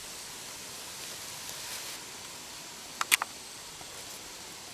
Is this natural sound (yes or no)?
yes